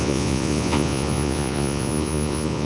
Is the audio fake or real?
fake